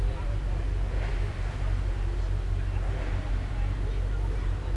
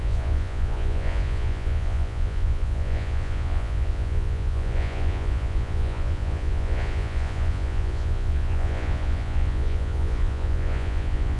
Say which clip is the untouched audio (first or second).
first